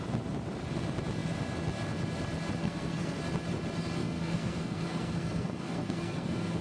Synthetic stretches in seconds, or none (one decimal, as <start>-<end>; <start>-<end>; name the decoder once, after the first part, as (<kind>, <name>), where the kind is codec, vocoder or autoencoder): 2.6-3.2 (codec, SNAC); 4.0-6.6